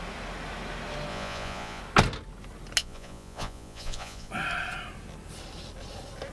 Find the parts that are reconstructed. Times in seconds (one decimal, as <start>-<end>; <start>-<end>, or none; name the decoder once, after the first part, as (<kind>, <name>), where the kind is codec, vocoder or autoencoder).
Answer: 1.1-1.8 (vocoder, Vocos); 2.8-4.3